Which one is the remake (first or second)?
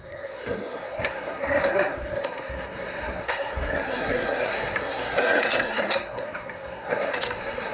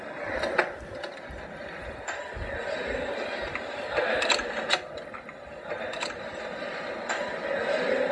first